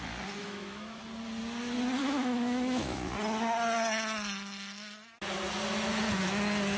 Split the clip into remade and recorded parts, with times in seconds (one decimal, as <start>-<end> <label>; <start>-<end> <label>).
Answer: 0.0-0.4 recorded; 0.4-1.0 remade; 1.0-2.0 recorded; 2.0-3.1 remade; 3.1-6.8 recorded